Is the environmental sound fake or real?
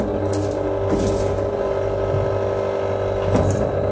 real